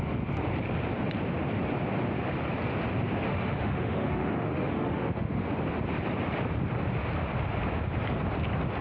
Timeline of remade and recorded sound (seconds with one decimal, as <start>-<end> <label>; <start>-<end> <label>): 0.0-3.3 recorded; 3.3-5.5 remade; 5.5-8.8 recorded